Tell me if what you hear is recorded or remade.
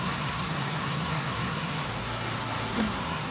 remade